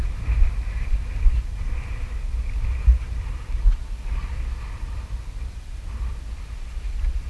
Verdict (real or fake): real